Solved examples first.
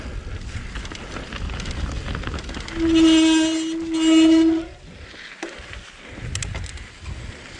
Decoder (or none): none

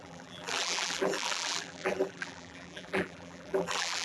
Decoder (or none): vocoder, BigVGAN v2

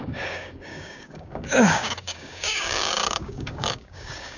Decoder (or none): codec, DAC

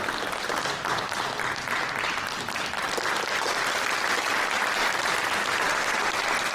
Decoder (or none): none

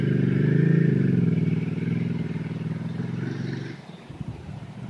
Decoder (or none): none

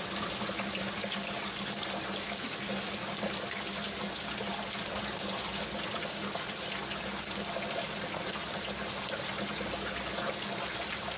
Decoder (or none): none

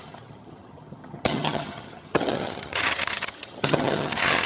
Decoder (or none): vocoder, HiFi-GAN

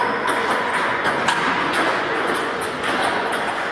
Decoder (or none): vocoder, Vocos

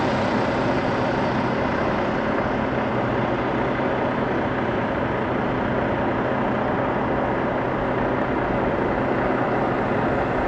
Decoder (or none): none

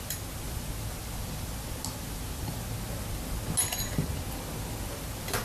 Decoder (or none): none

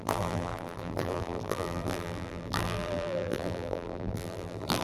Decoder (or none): vocoder, BigVGAN v2